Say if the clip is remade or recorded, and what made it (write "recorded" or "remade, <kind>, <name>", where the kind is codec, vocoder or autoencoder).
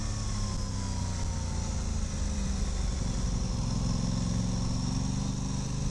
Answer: recorded